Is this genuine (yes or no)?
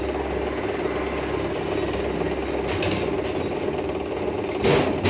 yes